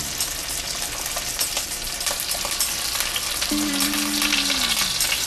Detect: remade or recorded recorded